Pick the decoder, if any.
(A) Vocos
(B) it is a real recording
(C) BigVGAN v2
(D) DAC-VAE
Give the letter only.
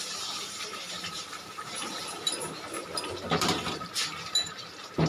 C